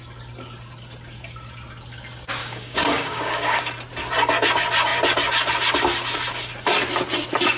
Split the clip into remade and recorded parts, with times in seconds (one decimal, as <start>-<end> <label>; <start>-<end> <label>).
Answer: 0.0-2.4 recorded; 2.4-3.6 remade; 3.6-7.6 recorded